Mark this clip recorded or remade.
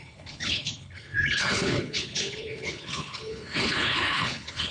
remade